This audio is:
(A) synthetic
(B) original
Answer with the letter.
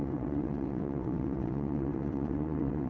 A